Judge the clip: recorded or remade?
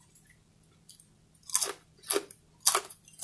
recorded